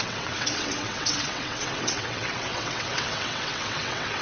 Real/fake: fake